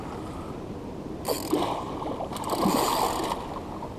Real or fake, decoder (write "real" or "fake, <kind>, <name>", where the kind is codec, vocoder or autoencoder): real